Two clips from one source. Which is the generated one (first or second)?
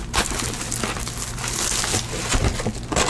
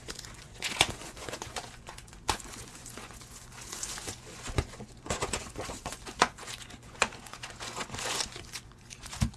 second